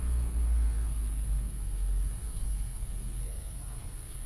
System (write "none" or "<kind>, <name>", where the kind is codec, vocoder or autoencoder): codec, SNAC